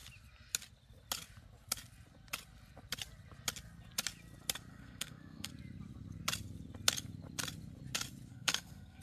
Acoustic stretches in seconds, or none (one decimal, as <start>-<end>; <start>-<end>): 0.0-4.7; 5.5-8.3